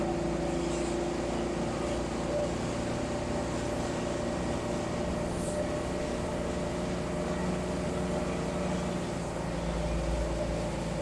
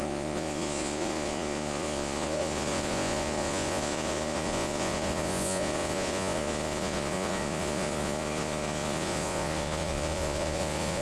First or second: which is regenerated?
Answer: second